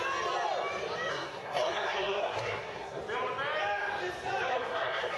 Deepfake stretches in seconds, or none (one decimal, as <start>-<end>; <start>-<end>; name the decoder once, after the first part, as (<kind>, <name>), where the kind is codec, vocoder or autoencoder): 1.1-3.0 (codec, SNAC); 4.5-5.2